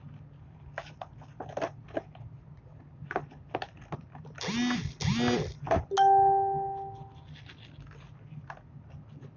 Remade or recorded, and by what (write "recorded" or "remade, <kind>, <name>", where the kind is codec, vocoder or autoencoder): recorded